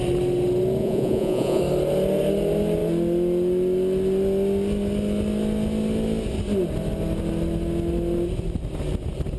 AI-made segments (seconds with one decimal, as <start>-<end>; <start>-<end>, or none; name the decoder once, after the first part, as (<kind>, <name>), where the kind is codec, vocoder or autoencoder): 0.8-1.6 (vocoder, Vocos)